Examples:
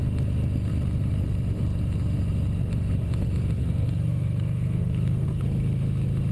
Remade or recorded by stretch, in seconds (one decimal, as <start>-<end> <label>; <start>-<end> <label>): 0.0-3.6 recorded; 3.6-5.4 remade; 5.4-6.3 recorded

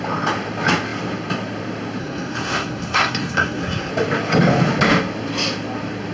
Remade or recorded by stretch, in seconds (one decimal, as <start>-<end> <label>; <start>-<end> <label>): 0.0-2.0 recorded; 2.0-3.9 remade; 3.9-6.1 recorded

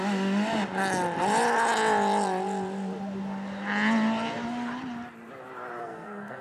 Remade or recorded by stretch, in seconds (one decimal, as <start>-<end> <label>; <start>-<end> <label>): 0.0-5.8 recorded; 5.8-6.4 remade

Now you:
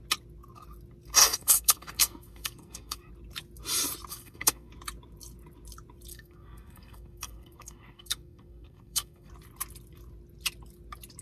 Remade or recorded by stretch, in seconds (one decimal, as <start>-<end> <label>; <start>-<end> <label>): 0.0-1.2 recorded; 1.2-3.1 remade; 3.1-4.1 recorded; 4.1-4.7 remade; 4.7-6.1 recorded; 6.1-9.3 remade; 9.3-11.2 recorded